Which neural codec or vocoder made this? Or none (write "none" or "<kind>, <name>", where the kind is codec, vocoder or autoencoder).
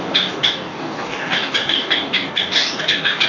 codec, DAC